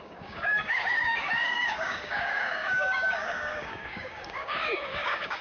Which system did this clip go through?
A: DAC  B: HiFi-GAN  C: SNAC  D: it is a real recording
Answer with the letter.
A